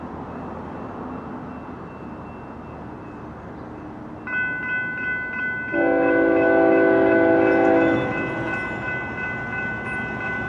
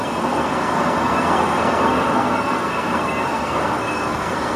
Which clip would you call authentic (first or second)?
first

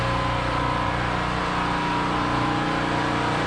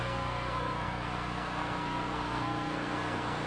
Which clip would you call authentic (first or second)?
first